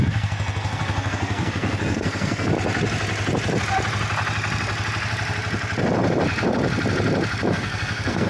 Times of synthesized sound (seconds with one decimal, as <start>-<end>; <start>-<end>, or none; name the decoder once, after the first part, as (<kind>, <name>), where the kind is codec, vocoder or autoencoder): 0.0-2.5 (codec, SNAC); 7.5-8.3